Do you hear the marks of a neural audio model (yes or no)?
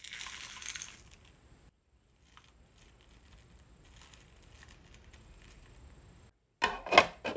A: no